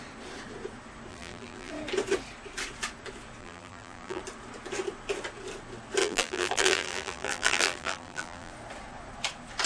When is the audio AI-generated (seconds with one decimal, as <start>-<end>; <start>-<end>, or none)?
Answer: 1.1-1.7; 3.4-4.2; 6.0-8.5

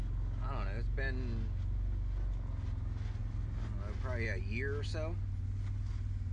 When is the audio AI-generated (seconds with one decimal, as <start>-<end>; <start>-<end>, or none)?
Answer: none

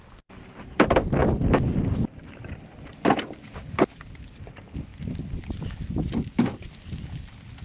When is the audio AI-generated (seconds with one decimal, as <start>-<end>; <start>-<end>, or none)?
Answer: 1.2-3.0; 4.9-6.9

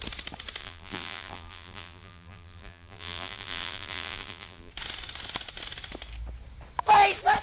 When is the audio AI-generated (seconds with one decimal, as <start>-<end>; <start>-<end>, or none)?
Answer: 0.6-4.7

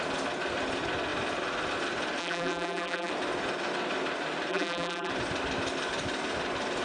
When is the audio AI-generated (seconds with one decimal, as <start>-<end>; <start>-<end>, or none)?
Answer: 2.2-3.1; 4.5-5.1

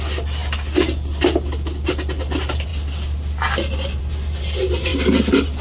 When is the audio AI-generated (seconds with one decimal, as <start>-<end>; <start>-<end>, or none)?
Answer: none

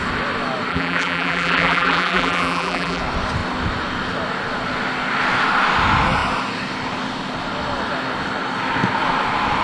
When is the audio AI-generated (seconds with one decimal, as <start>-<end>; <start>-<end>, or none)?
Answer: 0.7-3.0

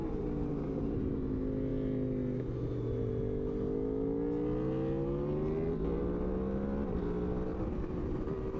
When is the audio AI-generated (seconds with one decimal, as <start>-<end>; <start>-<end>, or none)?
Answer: 0.0-1.1; 7.5-8.2